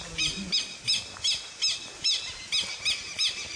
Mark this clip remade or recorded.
recorded